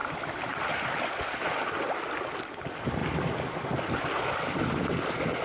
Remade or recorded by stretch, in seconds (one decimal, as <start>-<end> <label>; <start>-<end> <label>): 0.0-5.4 recorded